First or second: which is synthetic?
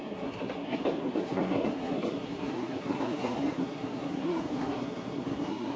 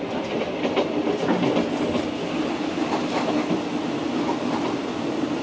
first